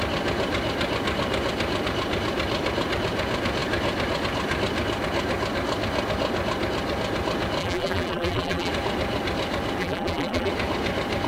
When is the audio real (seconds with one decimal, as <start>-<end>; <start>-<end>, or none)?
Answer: 0.0-7.6; 8.7-9.8; 10.5-11.3